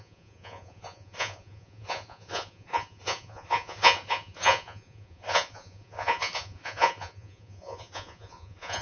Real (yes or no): no